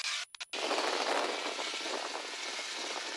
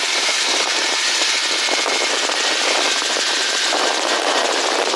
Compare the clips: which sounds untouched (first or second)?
first